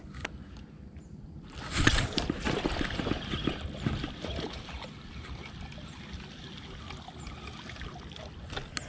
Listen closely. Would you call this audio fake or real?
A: real